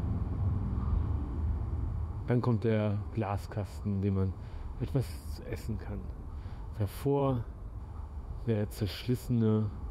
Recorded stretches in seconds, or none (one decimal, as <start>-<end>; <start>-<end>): 5.1-6.3; 7.2-7.8